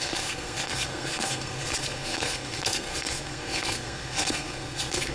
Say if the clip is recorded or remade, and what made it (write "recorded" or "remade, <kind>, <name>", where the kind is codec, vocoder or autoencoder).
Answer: remade, codec, SNAC